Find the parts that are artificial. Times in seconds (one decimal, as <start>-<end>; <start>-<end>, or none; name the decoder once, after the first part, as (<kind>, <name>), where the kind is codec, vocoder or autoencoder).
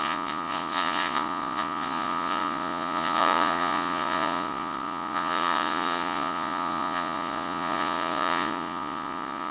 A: 0.0-9.5 (vocoder, Vocos)